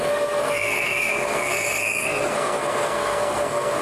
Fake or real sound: fake